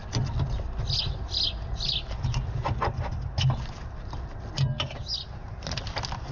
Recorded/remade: recorded